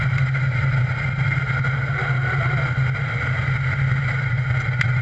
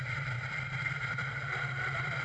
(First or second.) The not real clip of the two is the second